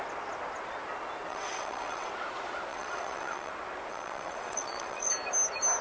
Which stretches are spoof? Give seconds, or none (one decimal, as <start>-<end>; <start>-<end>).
1.3-2.1; 2.7-3.5; 3.9-5.1